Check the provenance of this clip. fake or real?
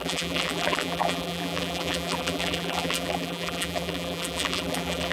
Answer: fake